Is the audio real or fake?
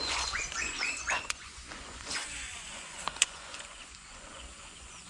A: fake